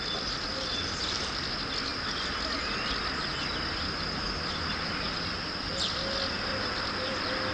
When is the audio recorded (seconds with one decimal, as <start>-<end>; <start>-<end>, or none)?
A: 0.0-7.5